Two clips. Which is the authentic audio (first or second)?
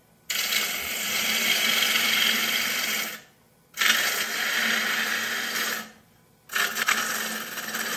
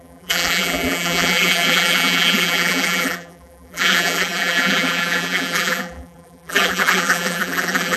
first